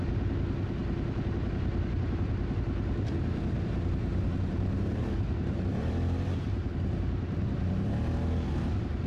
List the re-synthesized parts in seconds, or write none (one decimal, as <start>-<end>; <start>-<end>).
4.1-6.7